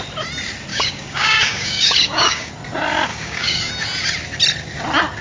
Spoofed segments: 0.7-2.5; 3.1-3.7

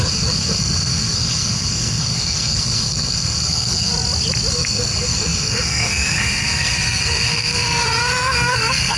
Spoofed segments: 0.0-3.9; 4.5-9.0

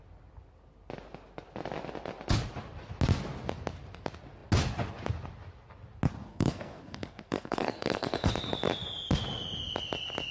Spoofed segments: 6.3-8.3

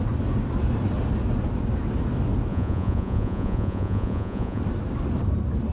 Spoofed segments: 2.5-4.6

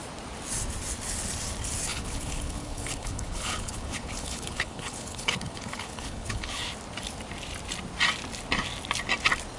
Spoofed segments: 1.9-6.6

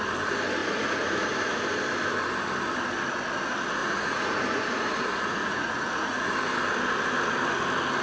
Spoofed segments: 0.6-1.6; 3.8-6.3

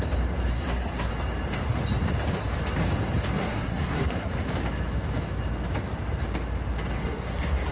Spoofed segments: 0.5-1.1; 3.4-4.3; 7.0-7.7

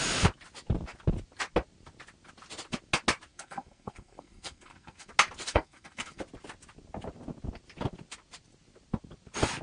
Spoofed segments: 3.3-5.1; 5.5-6.2